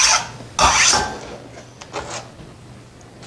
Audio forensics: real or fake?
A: real